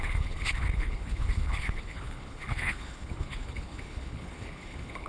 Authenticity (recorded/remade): remade